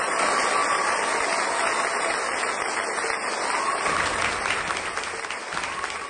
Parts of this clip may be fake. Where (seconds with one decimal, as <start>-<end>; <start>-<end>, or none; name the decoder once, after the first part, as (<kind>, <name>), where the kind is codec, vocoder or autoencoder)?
none